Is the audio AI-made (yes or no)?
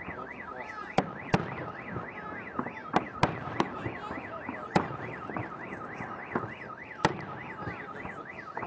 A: no